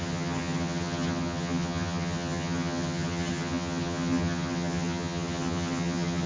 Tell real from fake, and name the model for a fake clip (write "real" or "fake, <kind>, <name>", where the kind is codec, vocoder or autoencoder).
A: fake, vocoder, HiFi-GAN